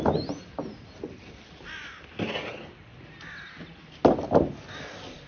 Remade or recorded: recorded